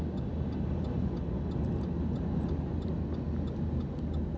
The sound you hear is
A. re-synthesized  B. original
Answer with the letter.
B